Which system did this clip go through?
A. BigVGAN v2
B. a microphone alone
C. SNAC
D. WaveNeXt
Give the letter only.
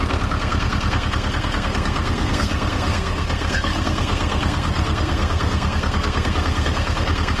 C